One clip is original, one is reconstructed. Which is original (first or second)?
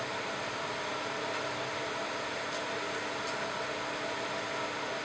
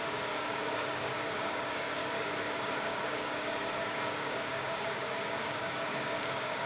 first